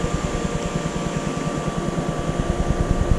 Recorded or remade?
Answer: recorded